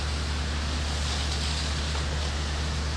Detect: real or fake real